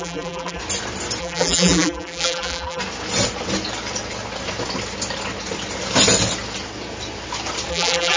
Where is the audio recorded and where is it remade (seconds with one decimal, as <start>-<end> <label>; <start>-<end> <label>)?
0.0-0.6 remade; 0.6-1.2 recorded; 1.2-2.8 remade; 2.8-7.7 recorded; 7.7-8.2 remade